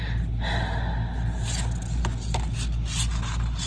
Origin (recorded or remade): recorded